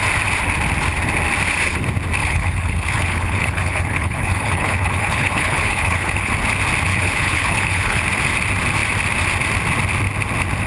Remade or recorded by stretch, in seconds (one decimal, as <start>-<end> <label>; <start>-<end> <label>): 0.0-2.2 recorded; 2.2-6.3 remade; 6.3-6.9 recorded; 6.9-8.0 remade; 8.0-10.7 recorded